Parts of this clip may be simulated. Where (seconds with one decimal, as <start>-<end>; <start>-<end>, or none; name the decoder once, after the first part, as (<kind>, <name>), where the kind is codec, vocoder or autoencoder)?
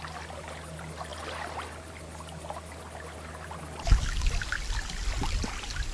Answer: none